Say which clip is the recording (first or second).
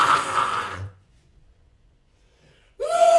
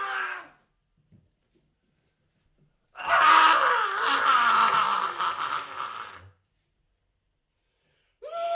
second